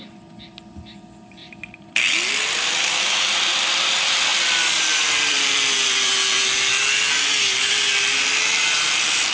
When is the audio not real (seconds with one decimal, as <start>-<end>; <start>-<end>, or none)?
1.4-2.7; 4.3-9.3